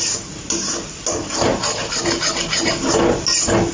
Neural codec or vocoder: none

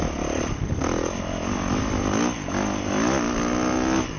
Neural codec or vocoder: none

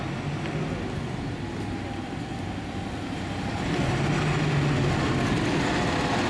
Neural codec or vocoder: none